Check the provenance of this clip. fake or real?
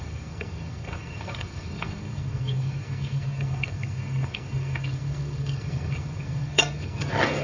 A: fake